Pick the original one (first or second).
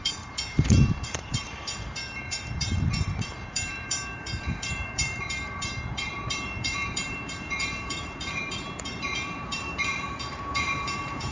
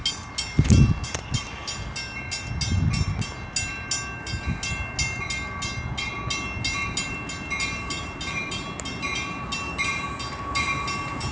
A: second